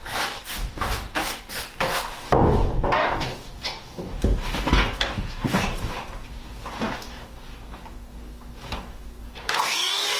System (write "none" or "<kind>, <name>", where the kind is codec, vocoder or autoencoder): codec, DAC